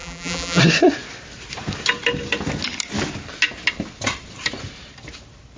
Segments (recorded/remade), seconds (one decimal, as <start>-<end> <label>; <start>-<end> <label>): 0.0-0.6 remade; 0.6-5.6 recorded